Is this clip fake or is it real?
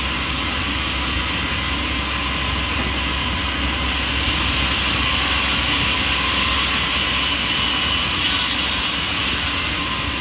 real